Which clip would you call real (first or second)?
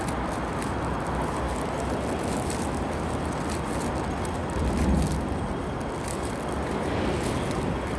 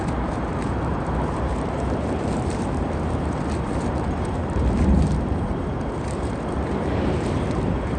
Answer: first